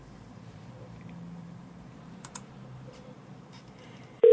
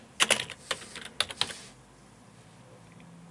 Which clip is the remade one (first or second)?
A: first